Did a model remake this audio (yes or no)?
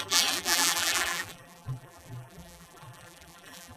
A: yes